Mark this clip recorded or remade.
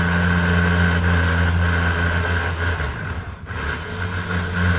recorded